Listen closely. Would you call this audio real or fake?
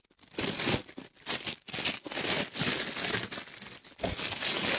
real